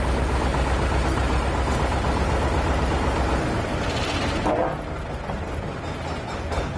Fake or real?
real